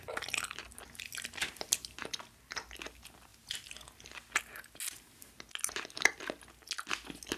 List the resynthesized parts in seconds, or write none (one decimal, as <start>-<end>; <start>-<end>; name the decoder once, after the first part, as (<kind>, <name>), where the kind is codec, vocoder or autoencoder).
none